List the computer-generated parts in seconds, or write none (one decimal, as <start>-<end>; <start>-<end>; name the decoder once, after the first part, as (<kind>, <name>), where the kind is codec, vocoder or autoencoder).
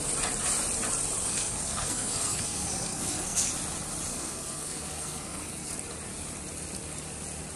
1.2-3.5 (codec, SNAC); 4.1-5.7